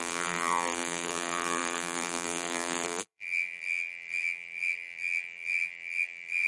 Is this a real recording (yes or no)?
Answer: no